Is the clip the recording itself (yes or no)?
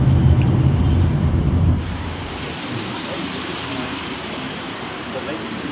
no